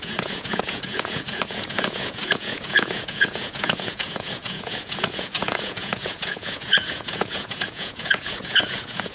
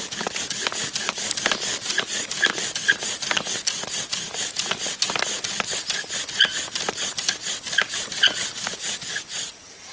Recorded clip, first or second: second